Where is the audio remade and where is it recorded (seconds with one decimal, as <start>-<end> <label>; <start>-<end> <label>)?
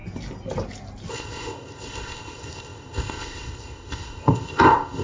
0.0-1.1 recorded; 1.1-5.0 remade